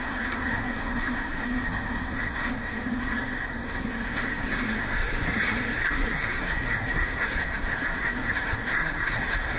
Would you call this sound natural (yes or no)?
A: no